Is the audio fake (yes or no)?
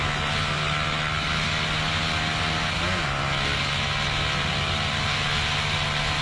no